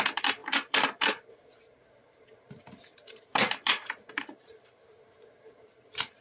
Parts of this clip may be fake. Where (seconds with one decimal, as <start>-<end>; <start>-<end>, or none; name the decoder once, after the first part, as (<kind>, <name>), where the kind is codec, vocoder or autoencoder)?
0.0-6.2 (vocoder, BigVGAN v2)